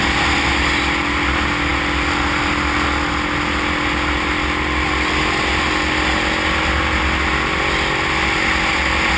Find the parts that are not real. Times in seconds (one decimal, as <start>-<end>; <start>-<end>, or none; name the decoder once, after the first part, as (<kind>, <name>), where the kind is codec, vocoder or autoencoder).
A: none